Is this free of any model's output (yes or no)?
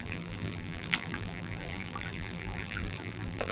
no